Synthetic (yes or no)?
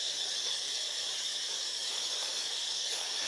yes